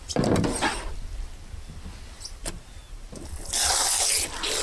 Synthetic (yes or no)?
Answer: no